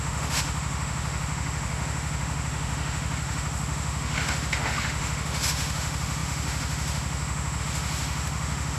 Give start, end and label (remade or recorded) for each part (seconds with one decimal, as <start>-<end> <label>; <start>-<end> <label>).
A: 0.0-8.8 remade